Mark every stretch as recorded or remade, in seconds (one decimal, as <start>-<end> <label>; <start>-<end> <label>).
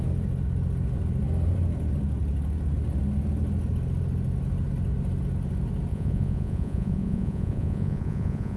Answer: 0.0-5.9 recorded; 5.9-8.6 remade